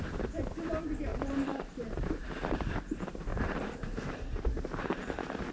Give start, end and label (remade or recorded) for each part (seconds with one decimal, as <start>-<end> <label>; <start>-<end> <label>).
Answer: 0.0-1.1 recorded; 1.1-2.7 remade; 2.7-3.3 recorded; 3.3-5.0 remade; 5.0-5.5 recorded